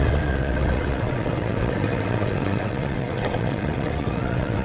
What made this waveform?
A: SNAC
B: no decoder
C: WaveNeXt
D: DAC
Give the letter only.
C